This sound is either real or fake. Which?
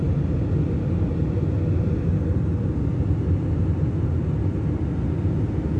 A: real